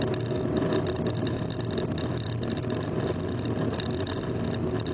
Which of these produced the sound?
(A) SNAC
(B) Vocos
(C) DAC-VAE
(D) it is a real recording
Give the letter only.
D